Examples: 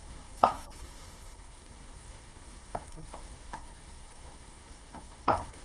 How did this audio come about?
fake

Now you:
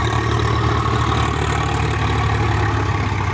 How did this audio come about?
real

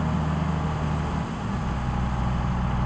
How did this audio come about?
real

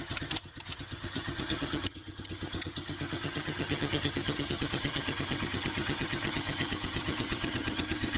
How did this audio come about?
fake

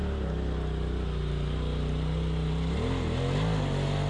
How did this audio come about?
real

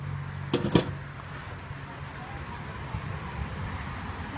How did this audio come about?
real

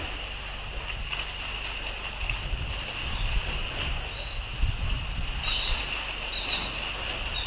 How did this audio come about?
real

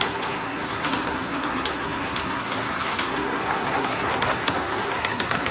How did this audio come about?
fake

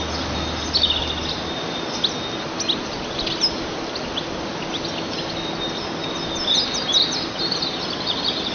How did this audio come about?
real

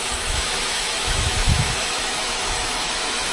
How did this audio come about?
fake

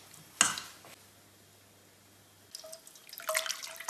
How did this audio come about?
real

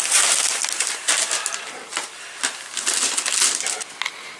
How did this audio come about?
real